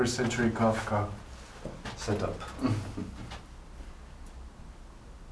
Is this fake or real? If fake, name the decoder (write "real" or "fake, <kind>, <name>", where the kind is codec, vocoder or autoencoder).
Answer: real